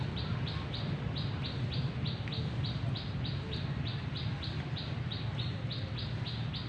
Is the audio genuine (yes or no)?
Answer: yes